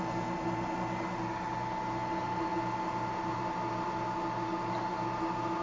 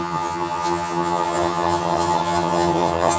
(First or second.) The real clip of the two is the first